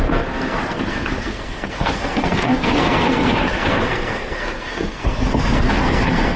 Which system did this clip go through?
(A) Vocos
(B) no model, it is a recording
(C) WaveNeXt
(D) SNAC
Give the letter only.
D